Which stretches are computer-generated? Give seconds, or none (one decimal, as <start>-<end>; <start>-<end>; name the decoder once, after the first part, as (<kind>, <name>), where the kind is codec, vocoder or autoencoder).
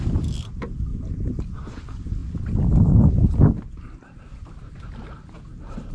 none